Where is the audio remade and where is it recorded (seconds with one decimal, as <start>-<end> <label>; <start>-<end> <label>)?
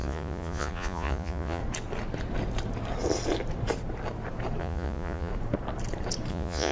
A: 0.0-1.6 remade; 1.6-4.6 recorded; 4.6-5.3 remade; 5.3-6.3 recorded; 6.3-6.7 remade